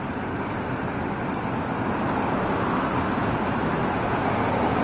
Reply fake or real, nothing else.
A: real